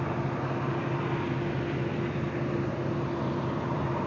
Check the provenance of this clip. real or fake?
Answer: real